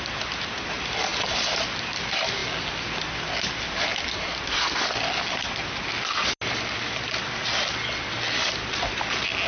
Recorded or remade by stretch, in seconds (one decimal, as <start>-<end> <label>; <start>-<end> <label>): 0.0-9.5 recorded